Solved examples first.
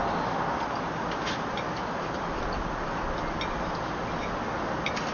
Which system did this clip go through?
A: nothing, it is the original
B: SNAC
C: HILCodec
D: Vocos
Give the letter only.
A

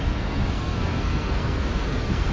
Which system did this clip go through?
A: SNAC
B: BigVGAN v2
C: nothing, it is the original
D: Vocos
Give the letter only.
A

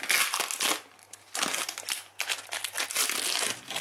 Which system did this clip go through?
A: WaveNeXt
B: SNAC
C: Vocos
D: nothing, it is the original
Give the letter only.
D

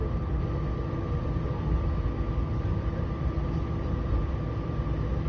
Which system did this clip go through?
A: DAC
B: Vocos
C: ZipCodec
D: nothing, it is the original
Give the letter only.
D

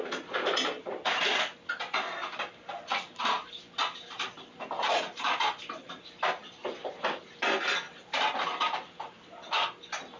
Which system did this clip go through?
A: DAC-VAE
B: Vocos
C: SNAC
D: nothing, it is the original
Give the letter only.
D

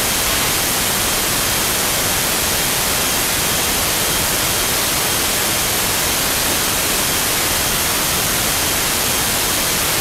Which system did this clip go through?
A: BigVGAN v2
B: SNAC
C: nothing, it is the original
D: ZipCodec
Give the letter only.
C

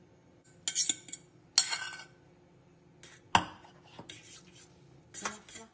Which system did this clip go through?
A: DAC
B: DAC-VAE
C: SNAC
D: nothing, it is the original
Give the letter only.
D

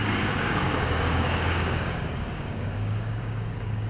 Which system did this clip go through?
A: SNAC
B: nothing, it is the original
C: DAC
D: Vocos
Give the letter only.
C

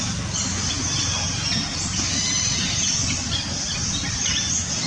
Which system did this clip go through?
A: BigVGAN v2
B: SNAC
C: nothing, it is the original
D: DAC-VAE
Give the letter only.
C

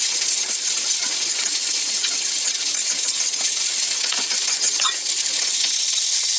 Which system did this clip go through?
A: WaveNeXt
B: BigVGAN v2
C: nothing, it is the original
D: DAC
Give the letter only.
A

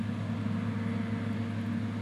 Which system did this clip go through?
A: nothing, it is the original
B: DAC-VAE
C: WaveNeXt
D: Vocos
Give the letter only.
A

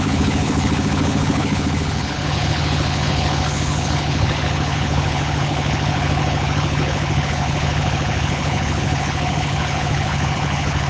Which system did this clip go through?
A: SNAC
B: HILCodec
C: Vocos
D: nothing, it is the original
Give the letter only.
B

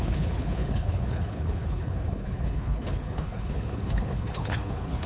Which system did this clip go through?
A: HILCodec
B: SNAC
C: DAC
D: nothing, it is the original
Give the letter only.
A